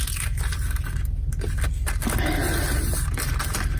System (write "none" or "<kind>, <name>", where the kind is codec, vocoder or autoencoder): none